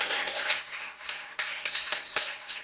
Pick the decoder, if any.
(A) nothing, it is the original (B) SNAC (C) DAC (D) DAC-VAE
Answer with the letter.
B